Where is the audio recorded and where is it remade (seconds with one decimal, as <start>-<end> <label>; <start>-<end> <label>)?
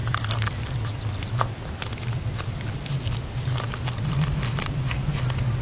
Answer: 0.0-5.6 recorded